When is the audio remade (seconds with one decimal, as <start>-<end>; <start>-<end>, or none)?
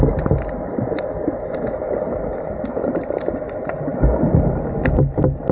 2.3-3.4